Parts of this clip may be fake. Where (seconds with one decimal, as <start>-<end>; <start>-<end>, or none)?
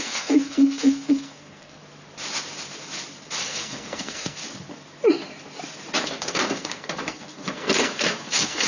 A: 0.0-1.8; 3.4-4.4; 6.0-8.7